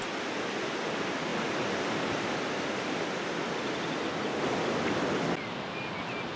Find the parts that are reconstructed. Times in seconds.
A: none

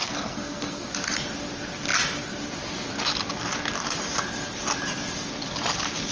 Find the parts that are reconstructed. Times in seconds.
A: 0.0-0.9 (codec, SNAC)

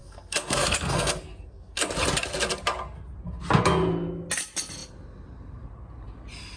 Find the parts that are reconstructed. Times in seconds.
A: 0.0-1.8 (codec, SNAC)

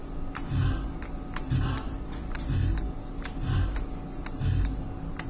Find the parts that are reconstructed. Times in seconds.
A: none

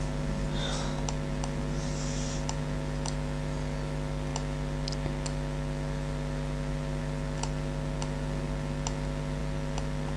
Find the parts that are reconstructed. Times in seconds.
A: none

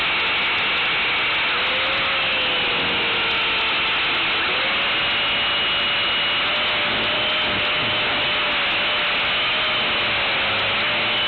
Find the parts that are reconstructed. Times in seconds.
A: none

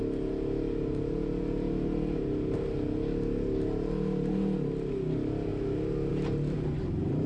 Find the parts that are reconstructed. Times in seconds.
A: none